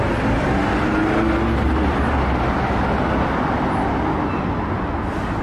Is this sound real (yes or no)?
yes